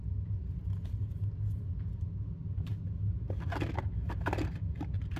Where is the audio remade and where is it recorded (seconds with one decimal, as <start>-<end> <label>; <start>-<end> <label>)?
0.0-5.2 recorded